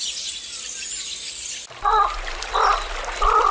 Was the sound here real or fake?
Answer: real